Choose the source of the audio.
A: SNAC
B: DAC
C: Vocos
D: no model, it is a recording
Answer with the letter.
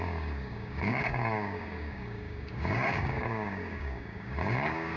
B